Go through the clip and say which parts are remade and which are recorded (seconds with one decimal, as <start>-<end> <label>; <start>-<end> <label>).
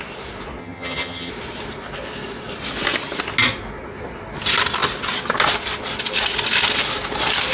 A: 0.0-0.6 recorded; 0.6-1.3 remade; 1.3-7.5 recorded